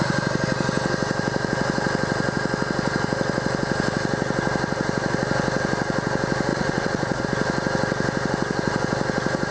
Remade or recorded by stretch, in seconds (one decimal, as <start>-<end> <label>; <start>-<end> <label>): 0.0-6.5 recorded; 6.5-7.2 remade; 7.2-9.5 recorded